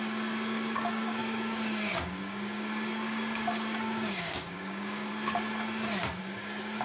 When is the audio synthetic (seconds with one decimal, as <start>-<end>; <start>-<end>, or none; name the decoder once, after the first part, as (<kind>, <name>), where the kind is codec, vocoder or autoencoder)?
0.0-5.1 (codec, DAC); 6.2-6.8